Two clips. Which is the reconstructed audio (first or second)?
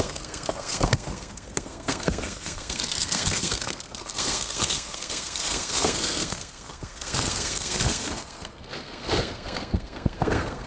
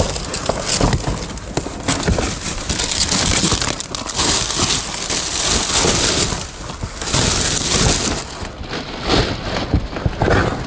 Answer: first